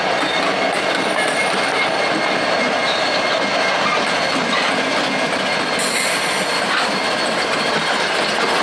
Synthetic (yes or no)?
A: no